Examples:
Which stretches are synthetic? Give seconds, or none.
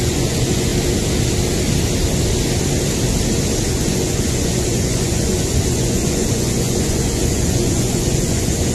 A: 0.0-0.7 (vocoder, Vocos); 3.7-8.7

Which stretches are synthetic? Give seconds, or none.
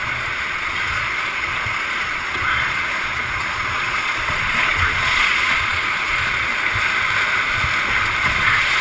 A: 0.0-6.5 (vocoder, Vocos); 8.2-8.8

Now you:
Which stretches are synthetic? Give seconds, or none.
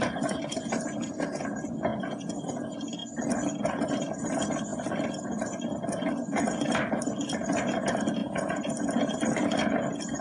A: 1.9-2.4 (vocoder, Vocos); 8.2-8.7